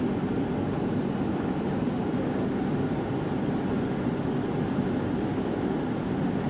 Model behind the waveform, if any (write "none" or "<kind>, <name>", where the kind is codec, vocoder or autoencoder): none